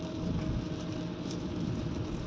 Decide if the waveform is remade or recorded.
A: recorded